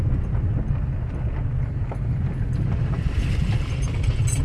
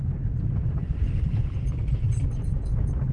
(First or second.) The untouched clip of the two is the first